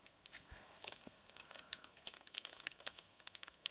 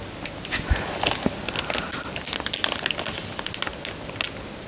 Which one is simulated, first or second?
first